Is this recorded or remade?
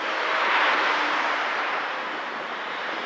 remade